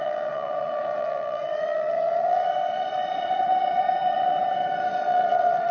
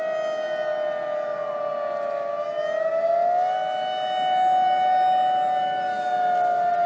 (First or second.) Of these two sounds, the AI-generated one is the first